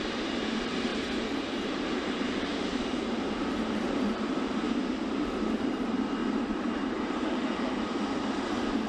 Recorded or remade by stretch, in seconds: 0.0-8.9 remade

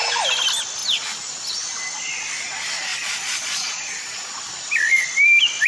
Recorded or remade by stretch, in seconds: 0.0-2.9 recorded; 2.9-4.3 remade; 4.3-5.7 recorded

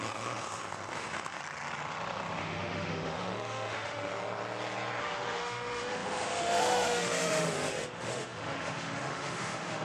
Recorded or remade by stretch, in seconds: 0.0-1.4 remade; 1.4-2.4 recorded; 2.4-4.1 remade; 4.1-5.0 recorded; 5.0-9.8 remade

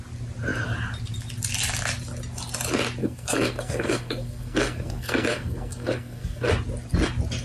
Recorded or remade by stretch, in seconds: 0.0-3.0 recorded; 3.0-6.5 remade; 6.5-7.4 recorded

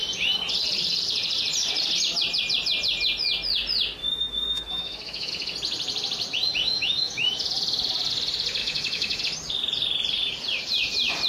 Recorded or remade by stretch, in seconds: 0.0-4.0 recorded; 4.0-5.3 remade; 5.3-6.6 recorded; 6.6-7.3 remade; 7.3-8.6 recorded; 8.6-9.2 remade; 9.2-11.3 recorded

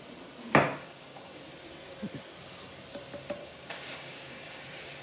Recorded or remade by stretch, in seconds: 0.0-0.8 recorded; 0.8-1.4 remade; 1.4-3.4 recorded; 3.4-4.6 remade; 4.6-5.0 recorded

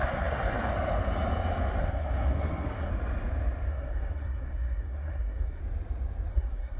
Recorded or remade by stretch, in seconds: 0.0-0.7 remade; 0.7-1.8 recorded; 1.8-2.9 remade; 2.9-3.7 recorded; 3.7-5.6 remade; 5.6-6.3 recorded; 6.3-6.8 remade